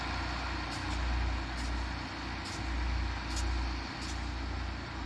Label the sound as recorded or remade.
recorded